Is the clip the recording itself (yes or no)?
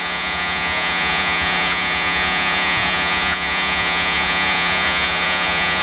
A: no